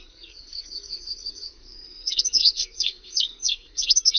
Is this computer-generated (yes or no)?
yes